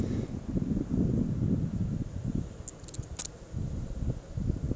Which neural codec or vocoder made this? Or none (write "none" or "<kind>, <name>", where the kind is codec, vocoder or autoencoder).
none